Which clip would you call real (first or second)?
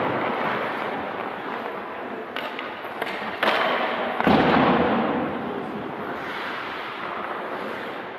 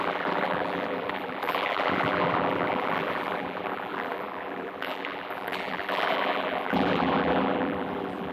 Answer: first